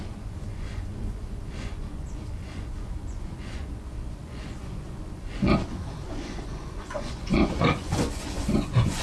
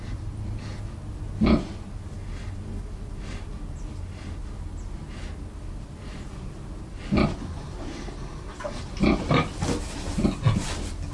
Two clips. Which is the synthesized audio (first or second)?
first